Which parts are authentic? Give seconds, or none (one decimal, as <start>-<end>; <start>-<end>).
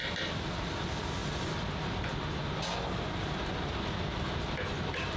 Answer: 0.0-5.2